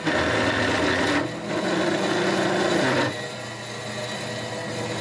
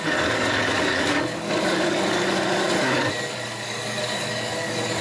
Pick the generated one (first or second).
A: second